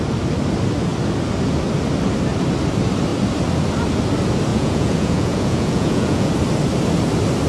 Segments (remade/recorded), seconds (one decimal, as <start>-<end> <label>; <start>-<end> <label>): 0.0-4.5 recorded; 4.5-6.3 remade; 6.3-7.5 recorded